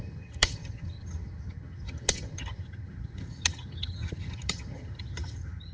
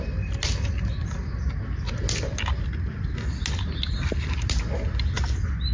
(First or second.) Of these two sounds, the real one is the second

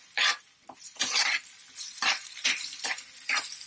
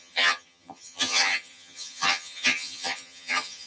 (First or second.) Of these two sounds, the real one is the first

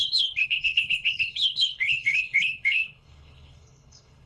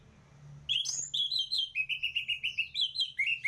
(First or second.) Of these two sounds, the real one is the second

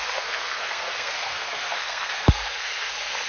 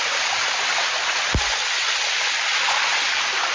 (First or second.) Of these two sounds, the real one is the second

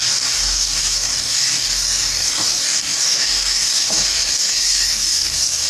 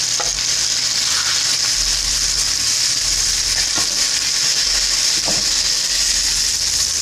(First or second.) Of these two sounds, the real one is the second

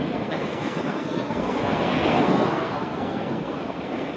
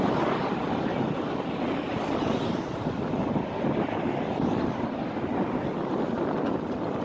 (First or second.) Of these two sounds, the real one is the second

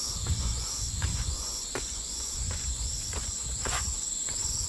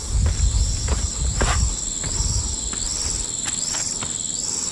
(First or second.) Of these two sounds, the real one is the second